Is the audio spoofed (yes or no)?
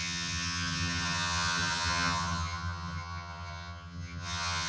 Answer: yes